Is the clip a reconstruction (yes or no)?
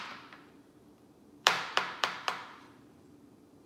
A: yes